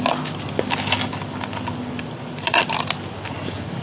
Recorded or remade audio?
recorded